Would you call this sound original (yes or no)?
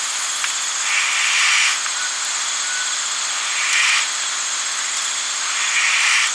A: yes